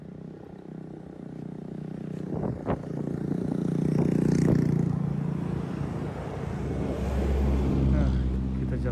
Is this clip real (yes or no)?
yes